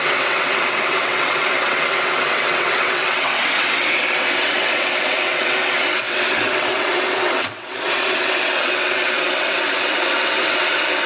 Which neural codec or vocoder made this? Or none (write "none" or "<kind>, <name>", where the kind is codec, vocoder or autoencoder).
vocoder, WaveNeXt